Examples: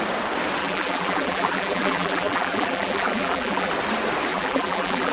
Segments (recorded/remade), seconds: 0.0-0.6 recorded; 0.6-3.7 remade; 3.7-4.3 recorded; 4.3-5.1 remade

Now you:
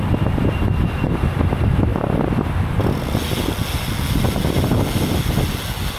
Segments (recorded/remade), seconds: 0.0-6.0 recorded